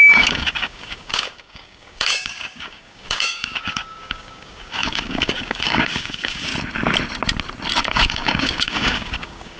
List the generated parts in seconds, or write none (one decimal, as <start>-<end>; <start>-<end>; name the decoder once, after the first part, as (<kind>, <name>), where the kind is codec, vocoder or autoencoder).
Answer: 0.0-6.5 (codec, DAC); 7.8-9.6

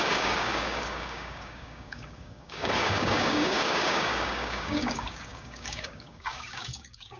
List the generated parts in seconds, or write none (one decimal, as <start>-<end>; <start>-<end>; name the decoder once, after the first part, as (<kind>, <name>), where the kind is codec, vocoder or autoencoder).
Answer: 0.0-7.2 (codec, DAC)

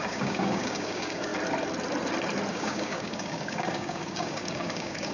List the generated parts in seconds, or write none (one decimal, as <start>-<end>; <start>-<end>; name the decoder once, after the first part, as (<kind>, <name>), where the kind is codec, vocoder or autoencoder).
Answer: 0.0-1.3 (codec, DAC); 2.5-5.1

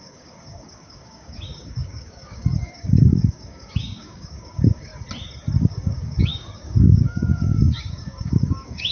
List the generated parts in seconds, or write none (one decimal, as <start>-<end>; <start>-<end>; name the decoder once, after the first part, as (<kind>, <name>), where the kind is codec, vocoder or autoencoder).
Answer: 0.0-4.9 (codec, DAC); 5.6-8.9

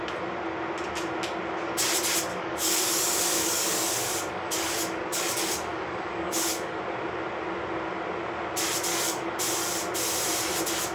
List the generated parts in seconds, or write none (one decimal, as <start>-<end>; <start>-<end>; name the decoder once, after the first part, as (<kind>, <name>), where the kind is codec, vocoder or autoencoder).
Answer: 2.3-6.8 (codec, DAC); 8.9-9.4

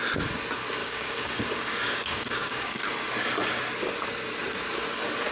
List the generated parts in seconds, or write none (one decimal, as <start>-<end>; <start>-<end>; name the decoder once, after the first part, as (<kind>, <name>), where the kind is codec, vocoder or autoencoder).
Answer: 0.8-2.8 (codec, DAC)